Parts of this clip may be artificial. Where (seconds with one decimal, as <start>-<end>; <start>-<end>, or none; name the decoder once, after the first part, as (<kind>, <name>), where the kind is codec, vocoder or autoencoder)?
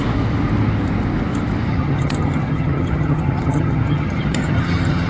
1.7-5.1 (vocoder, HiFi-GAN)